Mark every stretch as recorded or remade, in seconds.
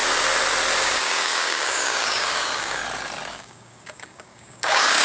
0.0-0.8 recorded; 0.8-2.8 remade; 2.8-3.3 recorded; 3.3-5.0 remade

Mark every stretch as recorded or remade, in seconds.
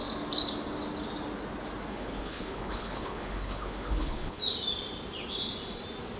0.0-1.9 recorded; 1.9-4.4 remade; 4.4-6.2 recorded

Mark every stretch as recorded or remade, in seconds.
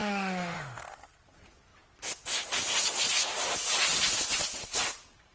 0.0-0.8 remade; 0.8-5.3 recorded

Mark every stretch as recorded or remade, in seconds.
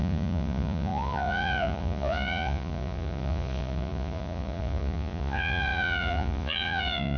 0.0-7.2 remade